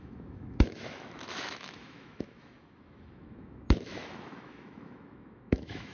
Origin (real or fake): fake